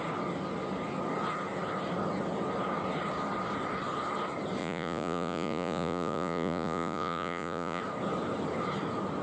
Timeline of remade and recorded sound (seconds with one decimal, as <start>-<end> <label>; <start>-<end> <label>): 0.0-4.6 recorded; 4.6-7.8 remade; 7.8-9.2 recorded